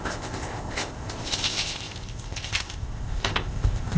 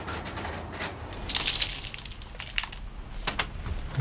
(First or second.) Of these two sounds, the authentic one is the second